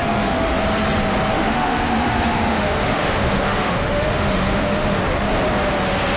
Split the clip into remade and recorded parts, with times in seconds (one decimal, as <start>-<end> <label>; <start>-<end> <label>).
0.0-0.6 remade; 0.6-1.3 recorded; 1.3-5.0 remade; 5.0-6.2 recorded